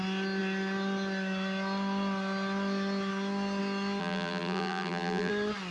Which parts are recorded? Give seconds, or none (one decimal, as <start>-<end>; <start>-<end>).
0.0-4.0; 5.3-5.7